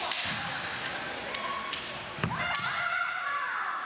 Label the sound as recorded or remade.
recorded